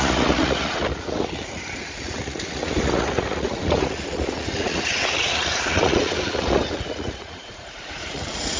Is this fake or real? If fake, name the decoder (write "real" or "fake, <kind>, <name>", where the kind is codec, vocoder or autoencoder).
fake, vocoder, Vocos